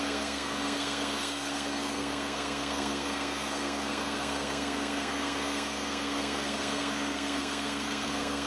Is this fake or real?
fake